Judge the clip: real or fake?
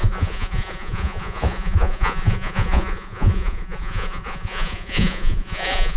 fake